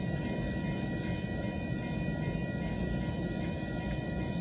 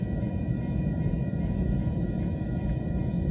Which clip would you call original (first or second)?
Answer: first